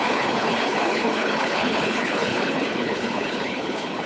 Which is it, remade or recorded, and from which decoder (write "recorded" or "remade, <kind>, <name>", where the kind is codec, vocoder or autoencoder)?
remade, codec, HILCodec